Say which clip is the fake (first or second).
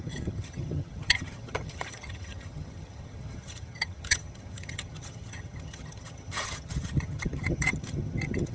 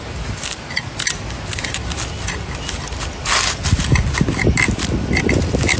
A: first